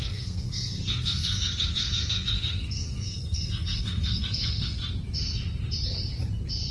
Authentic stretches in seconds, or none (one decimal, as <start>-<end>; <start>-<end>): 4.8-6.7